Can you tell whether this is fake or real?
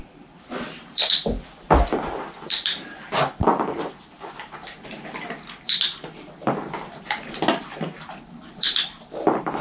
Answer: fake